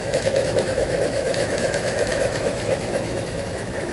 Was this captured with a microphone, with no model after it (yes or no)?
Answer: no